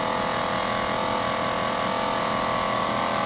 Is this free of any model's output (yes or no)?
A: yes